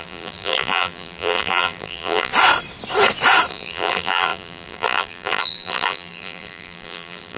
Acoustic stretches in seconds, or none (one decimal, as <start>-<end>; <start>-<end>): 2.3-3.5